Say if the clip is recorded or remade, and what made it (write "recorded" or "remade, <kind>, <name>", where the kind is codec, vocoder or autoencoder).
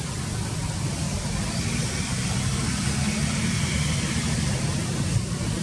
recorded